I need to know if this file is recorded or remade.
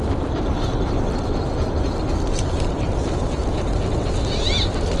recorded